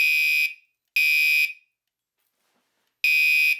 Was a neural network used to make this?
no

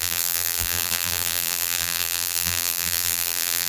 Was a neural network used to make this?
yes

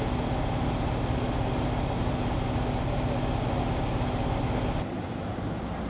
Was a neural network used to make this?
no